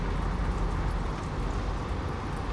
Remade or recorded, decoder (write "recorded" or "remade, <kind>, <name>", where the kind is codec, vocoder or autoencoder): recorded